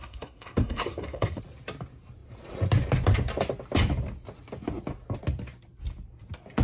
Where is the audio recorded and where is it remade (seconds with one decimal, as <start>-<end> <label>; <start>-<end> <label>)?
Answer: 0.0-1.4 remade; 1.4-6.6 recorded